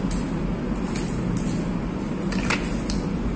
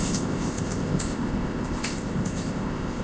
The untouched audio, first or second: first